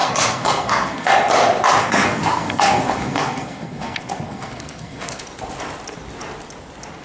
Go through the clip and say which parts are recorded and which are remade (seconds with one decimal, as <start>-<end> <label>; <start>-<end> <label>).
0.0-1.1 remade; 1.1-1.8 recorded; 1.8-5.2 remade; 5.2-7.0 recorded